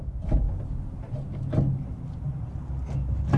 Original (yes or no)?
yes